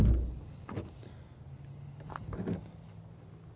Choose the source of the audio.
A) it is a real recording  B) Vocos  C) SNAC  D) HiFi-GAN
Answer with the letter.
A